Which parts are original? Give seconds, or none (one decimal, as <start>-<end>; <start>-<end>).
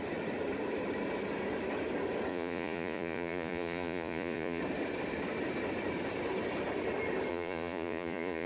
0.0-2.3; 4.6-7.3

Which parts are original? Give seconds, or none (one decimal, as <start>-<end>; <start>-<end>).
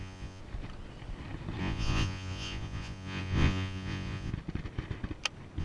0.4-1.6; 4.3-5.6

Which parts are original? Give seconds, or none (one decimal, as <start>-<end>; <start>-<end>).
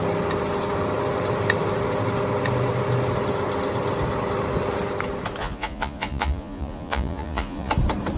0.0-5.4; 7.7-8.2